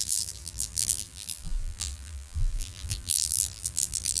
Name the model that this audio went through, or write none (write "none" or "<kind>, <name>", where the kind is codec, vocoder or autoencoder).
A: vocoder, BigVGAN v2